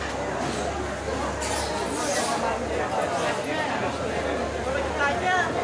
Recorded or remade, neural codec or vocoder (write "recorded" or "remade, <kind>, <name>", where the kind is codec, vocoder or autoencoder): recorded